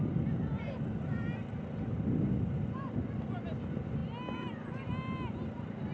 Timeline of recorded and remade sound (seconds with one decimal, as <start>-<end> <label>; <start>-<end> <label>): 0.0-5.9 recorded

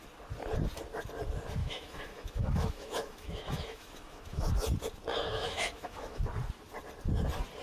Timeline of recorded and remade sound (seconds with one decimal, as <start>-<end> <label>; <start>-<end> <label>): 0.0-1.6 recorded; 1.6-4.5 remade; 4.5-5.1 recorded; 5.1-6.2 remade; 6.2-7.6 recorded

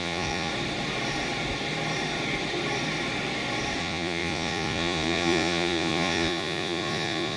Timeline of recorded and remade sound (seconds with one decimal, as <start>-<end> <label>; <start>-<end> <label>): 0.0-0.5 remade; 0.5-3.8 recorded; 3.8-7.4 remade